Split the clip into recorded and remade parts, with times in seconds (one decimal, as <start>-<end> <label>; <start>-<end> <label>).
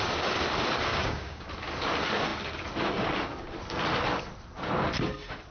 0.0-0.9 recorded; 0.9-1.5 remade; 1.5-5.5 recorded